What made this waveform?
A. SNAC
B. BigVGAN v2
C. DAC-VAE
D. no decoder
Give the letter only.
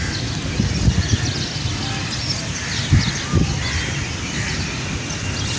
D